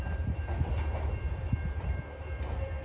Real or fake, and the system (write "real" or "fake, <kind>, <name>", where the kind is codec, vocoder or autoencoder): fake, vocoder, BigVGAN v2